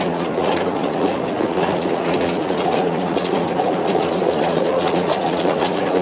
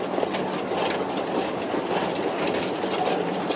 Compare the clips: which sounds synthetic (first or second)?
first